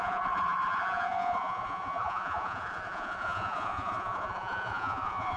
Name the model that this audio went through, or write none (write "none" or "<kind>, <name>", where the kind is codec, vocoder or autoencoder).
vocoder, Vocos